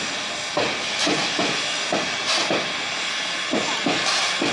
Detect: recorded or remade recorded